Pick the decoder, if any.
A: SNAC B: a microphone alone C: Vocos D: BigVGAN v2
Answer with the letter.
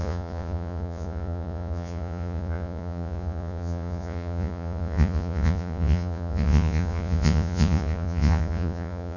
C